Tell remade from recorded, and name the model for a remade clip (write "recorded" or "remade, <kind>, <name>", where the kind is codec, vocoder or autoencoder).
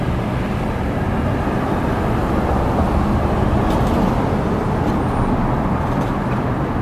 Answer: recorded